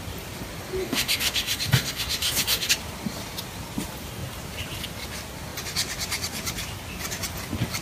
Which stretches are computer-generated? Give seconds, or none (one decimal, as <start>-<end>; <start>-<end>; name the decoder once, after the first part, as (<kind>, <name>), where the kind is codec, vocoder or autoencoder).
0.8-2.7 (codec, DAC)